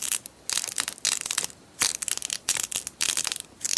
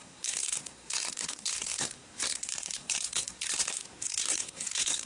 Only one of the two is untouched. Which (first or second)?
first